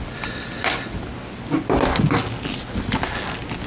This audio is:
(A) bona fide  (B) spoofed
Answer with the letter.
A